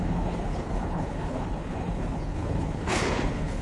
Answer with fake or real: fake